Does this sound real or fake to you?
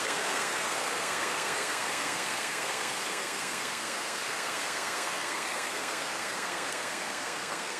fake